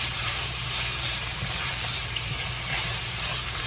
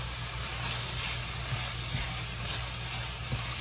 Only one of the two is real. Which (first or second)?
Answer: second